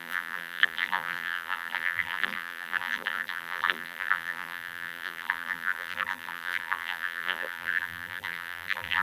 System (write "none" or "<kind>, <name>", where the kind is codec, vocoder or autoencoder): vocoder, BigVGAN v2